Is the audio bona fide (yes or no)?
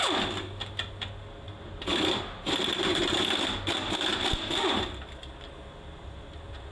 yes